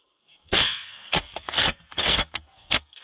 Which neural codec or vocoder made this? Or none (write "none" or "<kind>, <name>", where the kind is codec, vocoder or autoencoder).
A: codec, SNAC